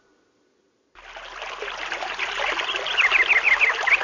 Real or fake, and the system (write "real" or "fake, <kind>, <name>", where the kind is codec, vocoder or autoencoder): real